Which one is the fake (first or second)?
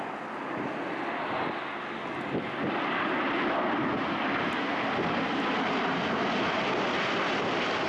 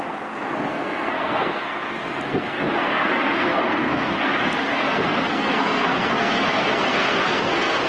second